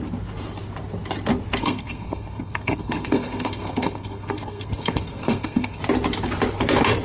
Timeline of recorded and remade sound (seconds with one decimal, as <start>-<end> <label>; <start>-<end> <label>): 0.0-1.6 recorded; 1.6-5.8 remade; 5.8-7.0 recorded